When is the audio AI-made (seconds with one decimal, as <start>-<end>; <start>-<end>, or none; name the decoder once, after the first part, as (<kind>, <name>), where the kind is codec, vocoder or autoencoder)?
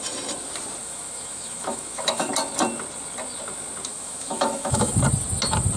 0.8-2.3 (autoencoder, DAC-VAE); 3.9-5.0